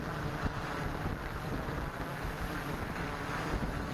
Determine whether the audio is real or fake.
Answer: fake